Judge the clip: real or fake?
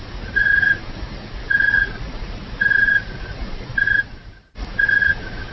fake